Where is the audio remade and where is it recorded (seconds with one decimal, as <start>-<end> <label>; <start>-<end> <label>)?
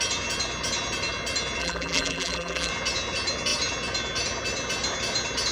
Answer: 0.0-1.6 recorded; 1.6-2.7 remade; 2.7-5.5 recorded